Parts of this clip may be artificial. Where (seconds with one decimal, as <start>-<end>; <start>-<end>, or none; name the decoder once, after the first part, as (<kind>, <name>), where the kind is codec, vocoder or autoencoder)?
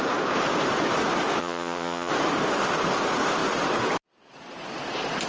1.4-2.1 (vocoder, HiFi-GAN)